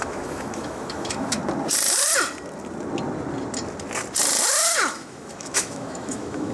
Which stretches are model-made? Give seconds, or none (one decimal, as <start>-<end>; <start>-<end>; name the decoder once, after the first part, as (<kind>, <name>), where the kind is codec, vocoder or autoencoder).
0.0-1.4 (autoencoder, DAC-VAE); 4.9-6.5